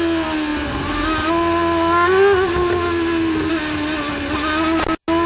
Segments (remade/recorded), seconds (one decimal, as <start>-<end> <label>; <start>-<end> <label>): 0.0-5.3 recorded